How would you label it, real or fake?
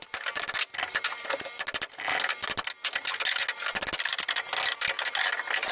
real